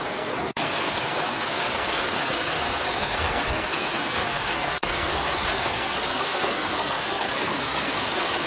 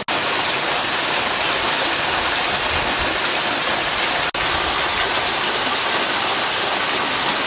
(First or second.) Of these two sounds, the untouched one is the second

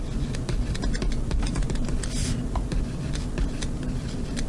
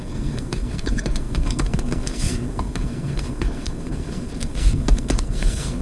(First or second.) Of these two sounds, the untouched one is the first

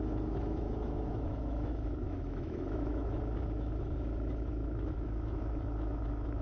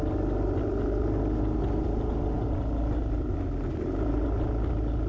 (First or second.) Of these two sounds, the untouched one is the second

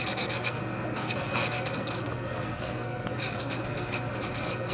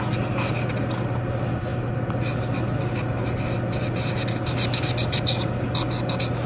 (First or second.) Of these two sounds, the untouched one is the second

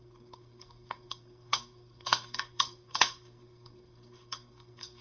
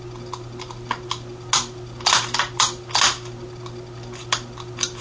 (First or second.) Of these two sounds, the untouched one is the second